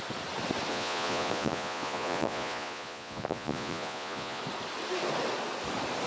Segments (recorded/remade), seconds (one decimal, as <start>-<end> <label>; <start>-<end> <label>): 0.0-0.7 recorded; 0.7-4.4 remade; 4.4-6.1 recorded

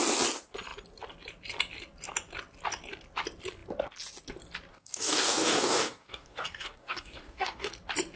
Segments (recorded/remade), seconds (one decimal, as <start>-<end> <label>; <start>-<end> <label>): 0.0-4.7 recorded; 4.7-7.7 remade; 7.7-8.2 recorded

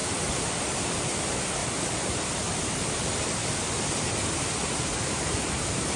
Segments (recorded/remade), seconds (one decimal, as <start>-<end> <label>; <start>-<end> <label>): 0.0-0.6 remade; 0.6-1.6 recorded; 1.6-2.7 remade; 2.7-3.4 recorded; 3.4-5.6 remade; 5.6-6.0 recorded

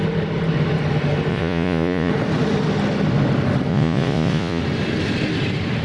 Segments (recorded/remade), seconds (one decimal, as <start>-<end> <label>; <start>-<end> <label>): 0.0-1.3 recorded; 1.3-2.1 remade; 2.1-3.7 recorded; 3.7-4.6 remade; 4.6-5.8 recorded

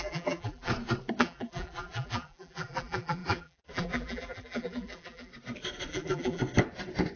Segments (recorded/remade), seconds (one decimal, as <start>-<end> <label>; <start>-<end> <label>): 0.0-0.7 remade; 0.7-1.2 recorded; 1.2-5.3 remade; 5.3-5.9 recorded; 5.9-6.4 remade; 6.4-7.2 recorded

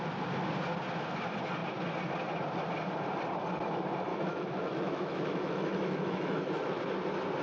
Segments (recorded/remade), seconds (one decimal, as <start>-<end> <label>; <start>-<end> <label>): 0.0-4.1 recorded; 4.1-6.8 remade; 6.8-7.4 recorded